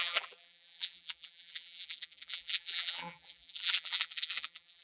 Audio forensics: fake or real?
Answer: fake